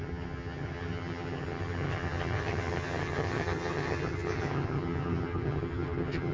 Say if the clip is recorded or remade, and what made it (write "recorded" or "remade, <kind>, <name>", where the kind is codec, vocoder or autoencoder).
remade, vocoder, HiFi-GAN